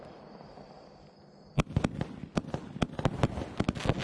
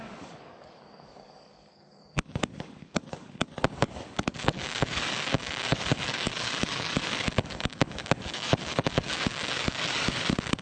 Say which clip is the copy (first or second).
second